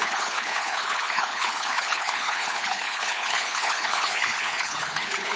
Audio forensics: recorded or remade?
remade